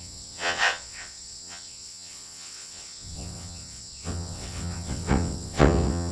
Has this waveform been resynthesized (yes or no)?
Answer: yes